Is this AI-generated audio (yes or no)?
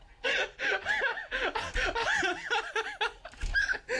no